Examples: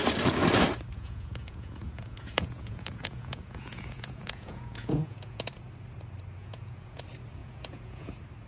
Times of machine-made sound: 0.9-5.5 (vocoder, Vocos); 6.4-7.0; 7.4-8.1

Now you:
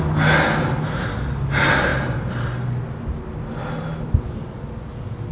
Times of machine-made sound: none

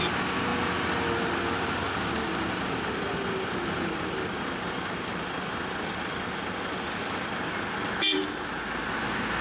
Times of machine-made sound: none

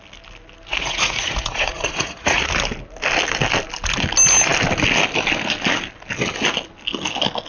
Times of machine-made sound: 0.7-2.5 (vocoder, Vocos)